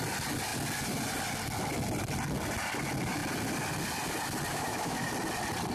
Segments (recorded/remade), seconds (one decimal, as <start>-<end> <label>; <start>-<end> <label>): 0.0-4.5 recorded; 4.5-5.1 remade; 5.1-5.7 recorded